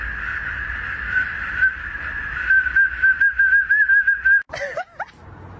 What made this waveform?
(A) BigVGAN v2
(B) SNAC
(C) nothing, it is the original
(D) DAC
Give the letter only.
C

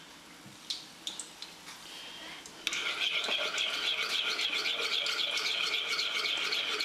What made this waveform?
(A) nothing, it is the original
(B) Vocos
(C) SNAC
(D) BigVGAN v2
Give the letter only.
A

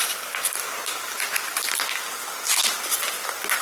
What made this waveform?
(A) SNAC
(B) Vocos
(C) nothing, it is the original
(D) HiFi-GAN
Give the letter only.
C